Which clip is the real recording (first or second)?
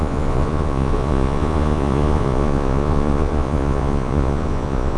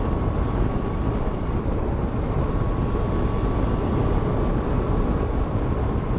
second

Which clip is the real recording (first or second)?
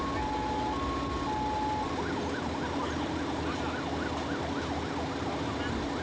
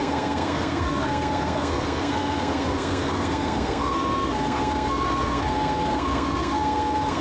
first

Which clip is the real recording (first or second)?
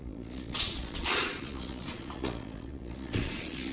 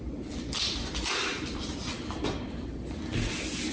second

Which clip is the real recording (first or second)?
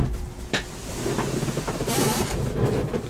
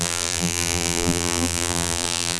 first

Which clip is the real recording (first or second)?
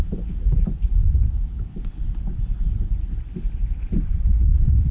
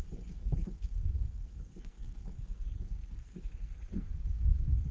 first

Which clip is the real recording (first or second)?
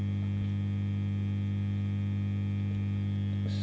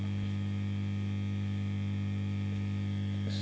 first